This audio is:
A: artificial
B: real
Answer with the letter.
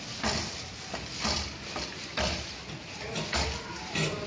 B